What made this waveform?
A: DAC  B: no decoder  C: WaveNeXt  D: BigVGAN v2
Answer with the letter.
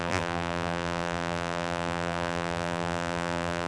D